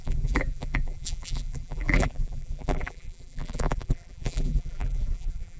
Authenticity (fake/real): fake